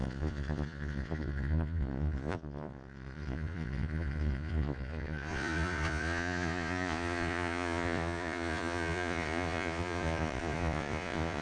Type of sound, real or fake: fake